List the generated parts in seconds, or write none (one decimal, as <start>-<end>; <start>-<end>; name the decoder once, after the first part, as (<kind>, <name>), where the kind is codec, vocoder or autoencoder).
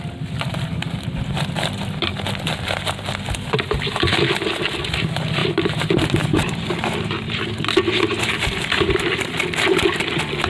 0.5-1.4 (vocoder, BigVGAN v2); 5.4-7.4; 8.1-9.4